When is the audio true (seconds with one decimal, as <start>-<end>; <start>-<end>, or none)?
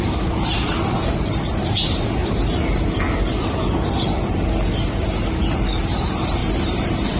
2.2-5.3